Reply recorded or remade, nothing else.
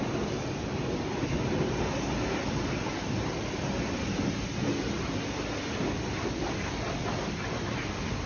remade